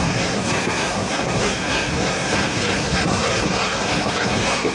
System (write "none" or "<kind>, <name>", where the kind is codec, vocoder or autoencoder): codec, SNAC